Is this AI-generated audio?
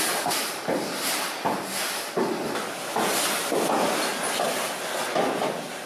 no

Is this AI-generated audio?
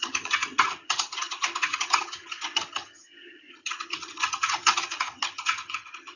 yes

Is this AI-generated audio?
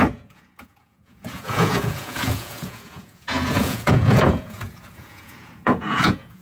yes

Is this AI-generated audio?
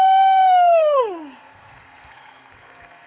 yes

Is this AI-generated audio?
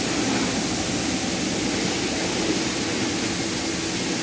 no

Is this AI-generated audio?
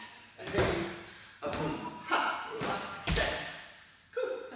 no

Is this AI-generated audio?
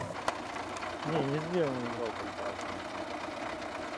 no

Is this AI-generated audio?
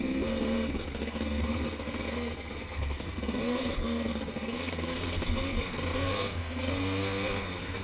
yes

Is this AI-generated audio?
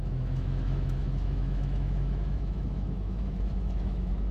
yes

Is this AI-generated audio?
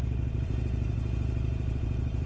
yes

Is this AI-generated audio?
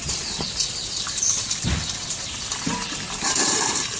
yes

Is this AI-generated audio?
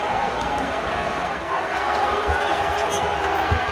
yes